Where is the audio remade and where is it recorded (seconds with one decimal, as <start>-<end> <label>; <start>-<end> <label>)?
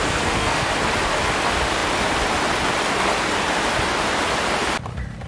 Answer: 0.0-0.7 remade; 0.7-5.3 recorded